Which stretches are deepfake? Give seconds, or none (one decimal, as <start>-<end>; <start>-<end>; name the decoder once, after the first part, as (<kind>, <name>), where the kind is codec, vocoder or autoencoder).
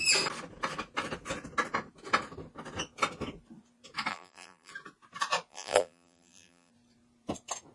4.1-4.7 (vocoder, BigVGAN v2); 5.5-6.7